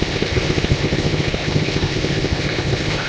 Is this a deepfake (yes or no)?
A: yes